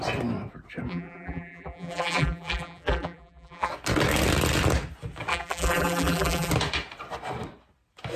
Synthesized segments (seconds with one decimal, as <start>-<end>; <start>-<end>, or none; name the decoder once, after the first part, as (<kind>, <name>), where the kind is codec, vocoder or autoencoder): 0.9-3.7 (vocoder, BigVGAN v2); 5.3-6.5

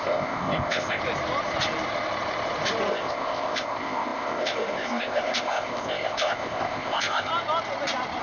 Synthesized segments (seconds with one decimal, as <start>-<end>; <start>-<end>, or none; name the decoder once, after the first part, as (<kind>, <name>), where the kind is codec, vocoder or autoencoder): 0.0-1.0 (codec, ZipCodec); 2.9-7.3

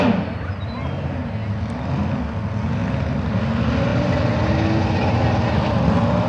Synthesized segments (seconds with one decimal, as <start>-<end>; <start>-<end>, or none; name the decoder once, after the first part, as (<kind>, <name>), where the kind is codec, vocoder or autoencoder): none